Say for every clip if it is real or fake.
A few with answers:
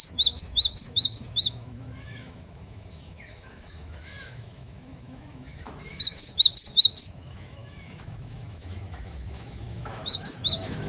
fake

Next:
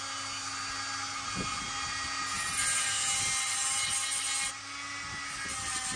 real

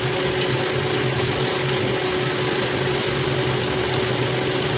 real